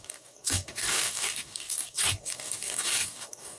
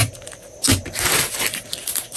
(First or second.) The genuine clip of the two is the second